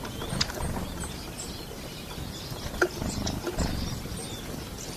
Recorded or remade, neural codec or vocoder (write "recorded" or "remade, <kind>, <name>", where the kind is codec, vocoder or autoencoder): recorded